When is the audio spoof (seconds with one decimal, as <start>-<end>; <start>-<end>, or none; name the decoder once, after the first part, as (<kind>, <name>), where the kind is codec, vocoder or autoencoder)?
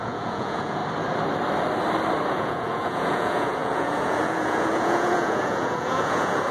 0.0-0.8 (vocoder, Vocos); 2.3-6.5